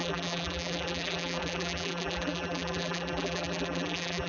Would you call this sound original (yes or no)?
no